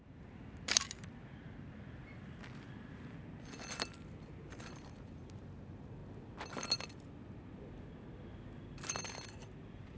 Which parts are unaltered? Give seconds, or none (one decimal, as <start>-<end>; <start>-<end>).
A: 2.0-4.5; 6.0-9.4